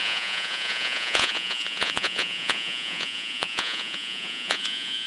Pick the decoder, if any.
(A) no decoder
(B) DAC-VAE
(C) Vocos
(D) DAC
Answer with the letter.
C